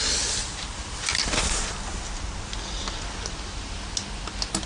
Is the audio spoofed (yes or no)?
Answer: no